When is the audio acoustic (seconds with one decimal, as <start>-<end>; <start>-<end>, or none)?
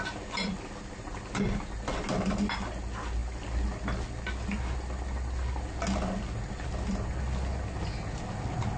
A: 0.0-8.8